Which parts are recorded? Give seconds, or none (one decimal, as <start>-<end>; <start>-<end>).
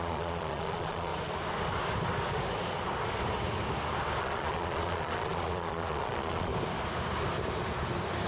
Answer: 1.1-4.2; 6.5-8.3